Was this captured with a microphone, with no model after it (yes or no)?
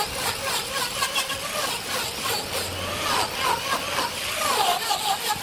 yes